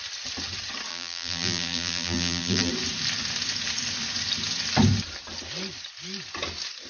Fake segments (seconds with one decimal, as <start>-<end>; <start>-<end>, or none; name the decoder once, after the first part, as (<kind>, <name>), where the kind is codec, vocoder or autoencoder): 0.9-2.7 (vocoder, BigVGAN v2)